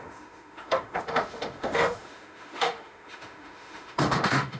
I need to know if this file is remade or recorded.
remade